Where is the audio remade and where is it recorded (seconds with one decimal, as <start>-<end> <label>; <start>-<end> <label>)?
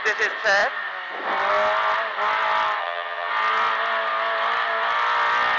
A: 0.0-2.8 recorded; 2.8-3.3 remade; 3.3-5.6 recorded